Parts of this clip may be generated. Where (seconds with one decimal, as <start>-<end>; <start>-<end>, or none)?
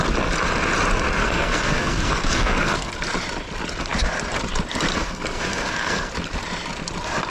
1.2-2.9; 4.9-6.1